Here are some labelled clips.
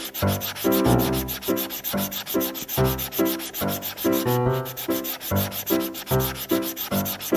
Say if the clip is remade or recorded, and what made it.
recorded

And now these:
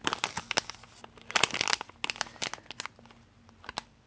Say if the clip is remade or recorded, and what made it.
recorded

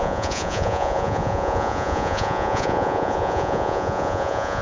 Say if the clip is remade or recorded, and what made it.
remade, vocoder, Vocos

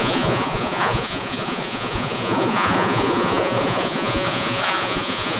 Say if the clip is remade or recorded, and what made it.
remade, vocoder, Vocos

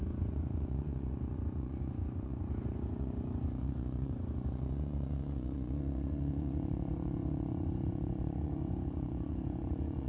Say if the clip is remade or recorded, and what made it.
remade, vocoder, Vocos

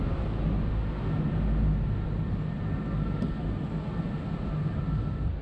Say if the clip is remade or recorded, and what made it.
recorded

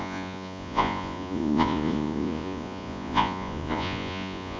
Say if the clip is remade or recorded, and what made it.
remade, vocoder, Vocos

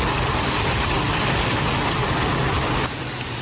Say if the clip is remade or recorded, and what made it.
recorded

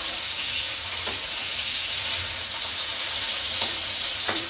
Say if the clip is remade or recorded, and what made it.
remade, vocoder, Vocos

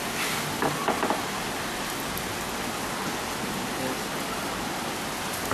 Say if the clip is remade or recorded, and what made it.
recorded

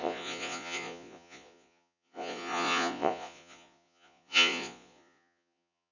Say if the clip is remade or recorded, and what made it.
remade, vocoder, Vocos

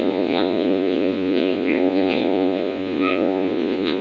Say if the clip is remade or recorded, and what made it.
remade, vocoder, Vocos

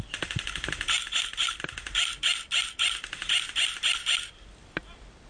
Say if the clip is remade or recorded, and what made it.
recorded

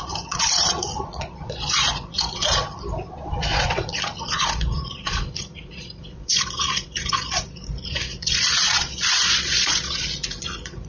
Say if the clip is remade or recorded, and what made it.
remade, vocoder, Vocos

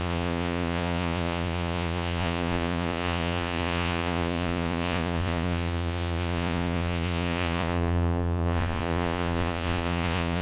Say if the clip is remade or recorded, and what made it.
remade, vocoder, Vocos